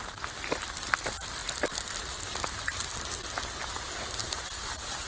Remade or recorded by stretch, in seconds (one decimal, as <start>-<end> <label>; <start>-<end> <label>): 0.0-5.1 recorded